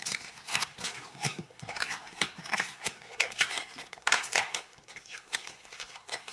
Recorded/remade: remade